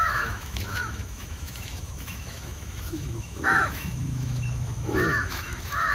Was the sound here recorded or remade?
remade